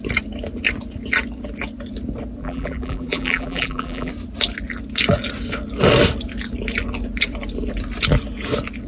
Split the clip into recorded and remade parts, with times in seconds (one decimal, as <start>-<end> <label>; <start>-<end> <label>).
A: 0.0-2.4 recorded; 2.4-4.1 remade; 4.1-8.9 recorded

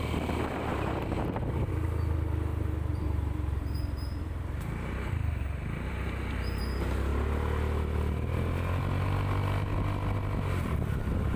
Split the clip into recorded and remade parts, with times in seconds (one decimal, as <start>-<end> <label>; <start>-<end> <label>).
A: 0.0-0.7 recorded; 0.7-1.7 remade; 1.7-2.9 recorded; 2.9-6.6 remade; 6.6-11.4 recorded

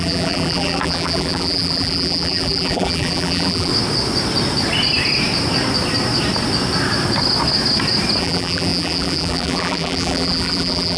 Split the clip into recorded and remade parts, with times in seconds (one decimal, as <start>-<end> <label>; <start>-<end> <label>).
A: 0.0-3.7 remade; 3.7-8.2 recorded; 8.2-11.0 remade